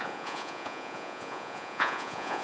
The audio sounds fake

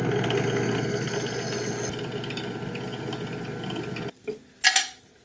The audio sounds real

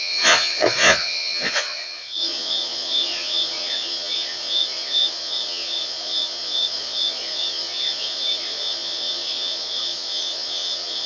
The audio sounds fake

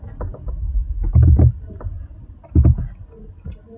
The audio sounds real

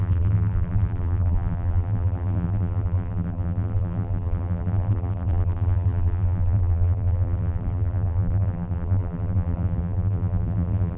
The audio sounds fake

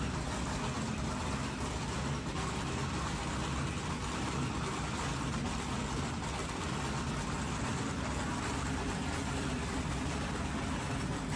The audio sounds real